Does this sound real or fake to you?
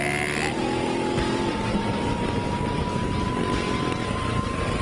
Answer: real